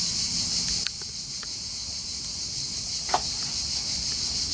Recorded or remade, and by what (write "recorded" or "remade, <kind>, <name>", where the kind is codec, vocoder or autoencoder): recorded